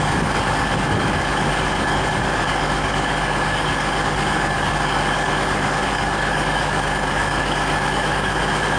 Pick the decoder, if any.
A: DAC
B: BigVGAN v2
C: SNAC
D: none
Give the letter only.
A